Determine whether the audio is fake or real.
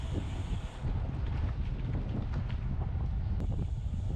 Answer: real